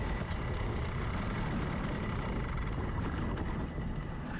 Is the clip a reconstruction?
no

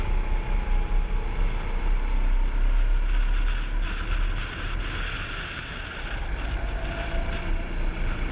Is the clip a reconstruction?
no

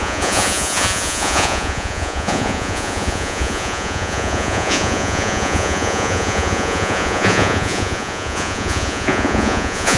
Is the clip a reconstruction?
yes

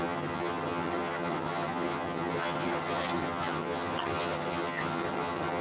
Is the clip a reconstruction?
yes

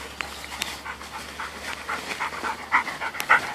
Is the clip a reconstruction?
no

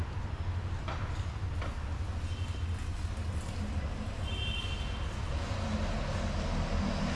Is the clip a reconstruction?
no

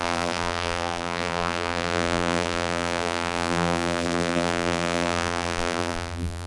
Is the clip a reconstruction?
yes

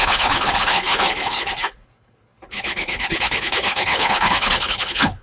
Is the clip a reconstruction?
yes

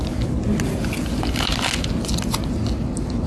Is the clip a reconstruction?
no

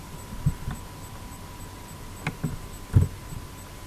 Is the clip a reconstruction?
no